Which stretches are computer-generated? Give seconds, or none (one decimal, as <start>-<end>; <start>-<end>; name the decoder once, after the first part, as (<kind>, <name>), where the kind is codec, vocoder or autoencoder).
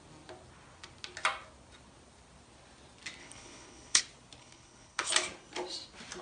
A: 3.2-4.0 (codec, HILCodec); 4.4-5.1